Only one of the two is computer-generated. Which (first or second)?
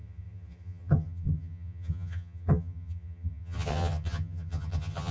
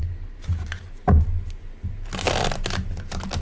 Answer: first